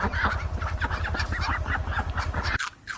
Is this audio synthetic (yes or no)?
no